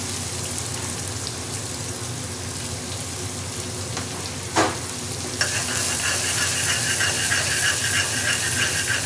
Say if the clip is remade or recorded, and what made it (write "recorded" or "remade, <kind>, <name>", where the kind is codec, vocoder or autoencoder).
recorded